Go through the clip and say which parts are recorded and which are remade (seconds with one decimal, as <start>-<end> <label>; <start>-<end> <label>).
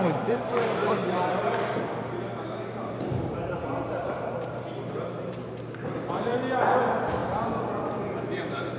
0.0-6.3 remade; 6.3-6.8 recorded; 6.8-7.2 remade; 7.2-7.8 recorded; 7.8-8.8 remade